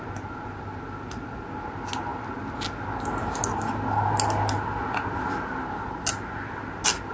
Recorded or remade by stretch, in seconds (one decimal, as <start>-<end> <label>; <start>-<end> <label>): 0.0-7.1 recorded